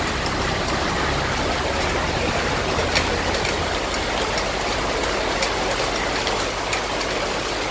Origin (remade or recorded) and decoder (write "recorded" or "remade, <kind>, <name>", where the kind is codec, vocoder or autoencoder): recorded